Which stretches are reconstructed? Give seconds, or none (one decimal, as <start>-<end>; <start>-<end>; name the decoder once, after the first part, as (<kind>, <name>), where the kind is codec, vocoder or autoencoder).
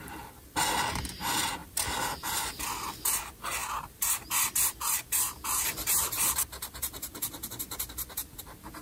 1.6-2.5 (vocoder, BigVGAN v2); 3.6-7.6